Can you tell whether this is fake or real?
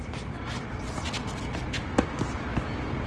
real